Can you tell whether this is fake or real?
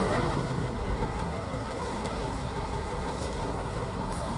fake